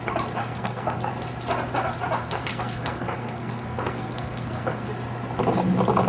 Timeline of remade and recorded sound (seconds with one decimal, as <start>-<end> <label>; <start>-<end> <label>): 0.0-0.4 recorded; 0.4-1.1 remade; 1.1-2.2 recorded; 2.2-4.9 remade; 4.9-6.1 recorded